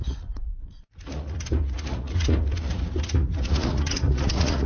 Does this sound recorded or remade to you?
remade